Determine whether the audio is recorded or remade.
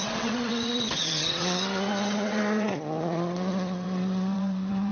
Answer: remade